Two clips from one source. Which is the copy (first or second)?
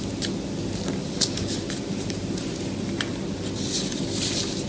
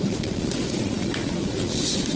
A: second